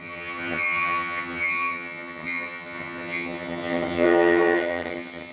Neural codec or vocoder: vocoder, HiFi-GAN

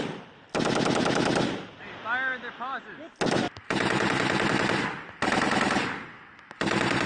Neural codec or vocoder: none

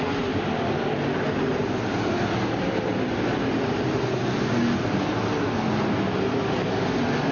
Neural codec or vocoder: none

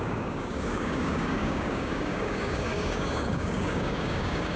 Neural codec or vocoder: codec, DAC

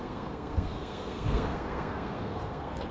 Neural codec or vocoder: codec, SNAC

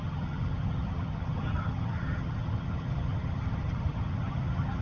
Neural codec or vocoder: vocoder, HiFi-GAN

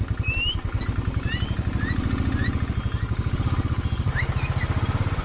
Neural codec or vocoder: none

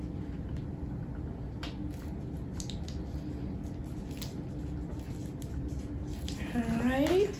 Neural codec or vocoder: none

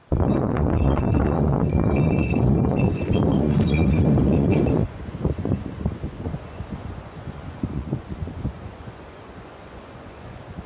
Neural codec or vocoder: vocoder, Vocos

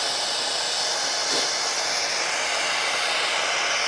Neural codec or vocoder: none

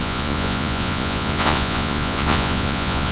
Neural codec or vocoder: vocoder, Vocos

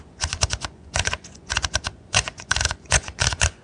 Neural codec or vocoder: vocoder, Vocos